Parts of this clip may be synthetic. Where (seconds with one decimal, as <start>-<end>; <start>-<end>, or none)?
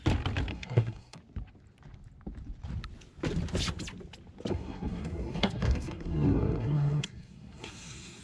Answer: 0.5-1.2; 4.5-8.2